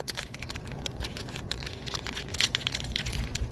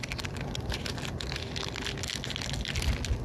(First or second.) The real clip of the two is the second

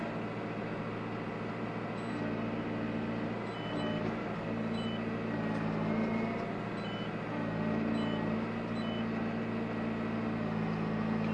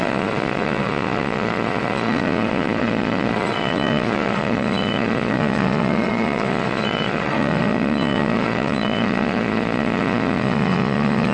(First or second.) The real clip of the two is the first